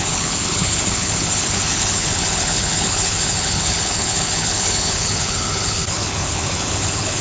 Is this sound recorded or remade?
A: remade